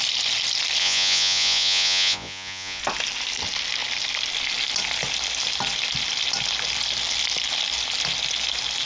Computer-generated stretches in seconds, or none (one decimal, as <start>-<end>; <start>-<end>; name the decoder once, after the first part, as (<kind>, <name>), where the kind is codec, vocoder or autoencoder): 0.8-2.8 (vocoder, Vocos)